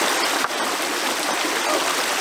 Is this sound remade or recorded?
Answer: recorded